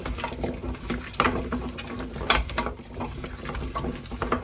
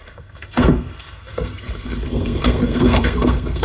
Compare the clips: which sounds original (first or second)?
first